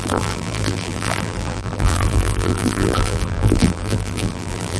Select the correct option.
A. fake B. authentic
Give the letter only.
A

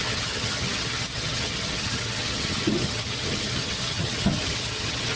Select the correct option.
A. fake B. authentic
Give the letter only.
A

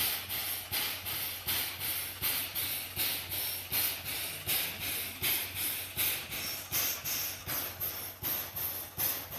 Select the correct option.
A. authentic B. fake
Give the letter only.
A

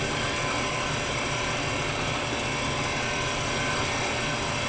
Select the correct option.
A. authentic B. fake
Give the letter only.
A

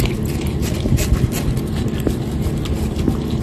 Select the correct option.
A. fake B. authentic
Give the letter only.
B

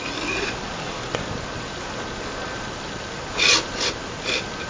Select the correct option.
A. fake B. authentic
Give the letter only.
B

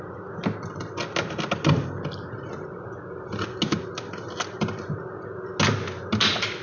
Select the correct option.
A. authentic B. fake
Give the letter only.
A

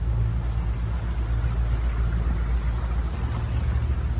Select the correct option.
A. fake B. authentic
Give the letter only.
B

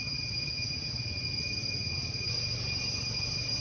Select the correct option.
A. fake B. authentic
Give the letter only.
B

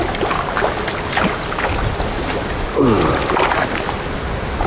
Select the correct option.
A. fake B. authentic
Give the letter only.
B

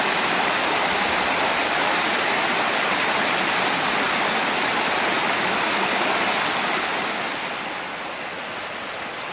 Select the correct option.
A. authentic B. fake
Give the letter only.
A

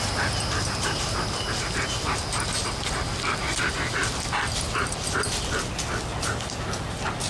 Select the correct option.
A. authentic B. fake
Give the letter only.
A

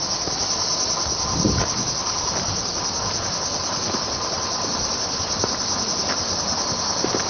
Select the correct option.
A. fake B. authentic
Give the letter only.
B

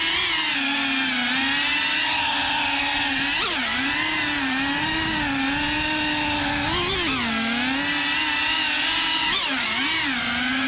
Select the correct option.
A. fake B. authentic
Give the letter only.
B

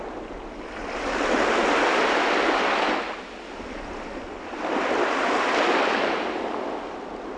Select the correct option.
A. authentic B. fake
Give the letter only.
A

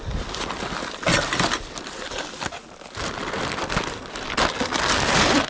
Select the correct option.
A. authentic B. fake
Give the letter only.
A